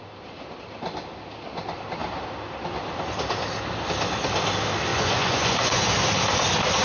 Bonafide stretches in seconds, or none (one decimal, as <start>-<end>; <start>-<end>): 0.0-4.9; 5.8-6.8